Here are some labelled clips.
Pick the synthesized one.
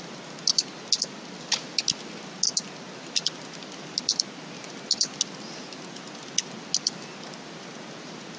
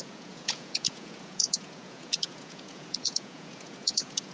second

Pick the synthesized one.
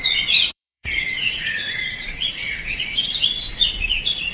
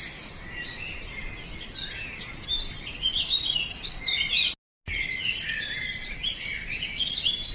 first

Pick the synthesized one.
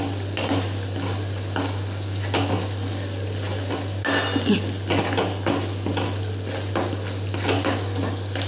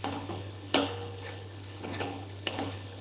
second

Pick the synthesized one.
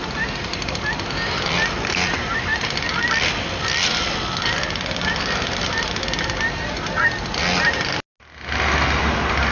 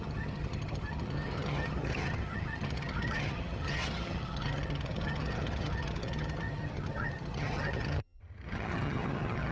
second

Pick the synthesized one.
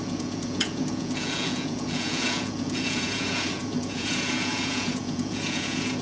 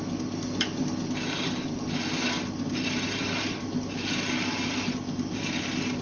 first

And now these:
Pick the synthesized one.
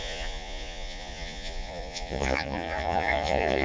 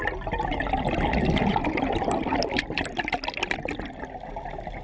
first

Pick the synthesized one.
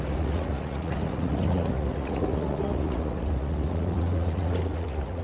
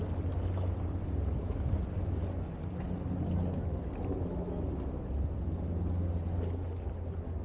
first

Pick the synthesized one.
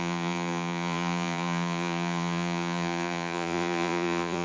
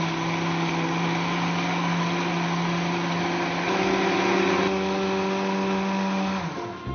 first